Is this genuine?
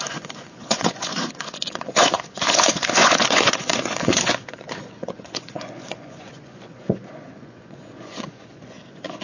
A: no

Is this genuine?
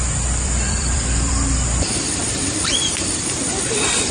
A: no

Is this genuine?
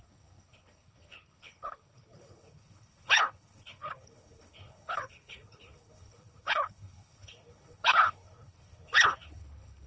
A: no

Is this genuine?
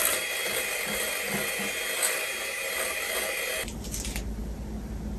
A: yes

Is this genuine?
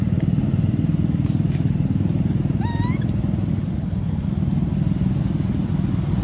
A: yes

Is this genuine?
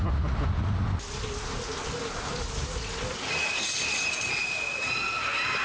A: yes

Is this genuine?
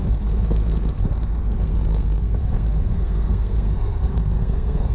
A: no